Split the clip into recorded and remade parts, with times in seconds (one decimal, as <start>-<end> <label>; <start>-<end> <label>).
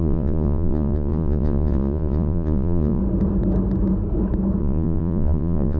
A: 0.0-3.0 remade; 3.0-4.6 recorded; 4.6-5.8 remade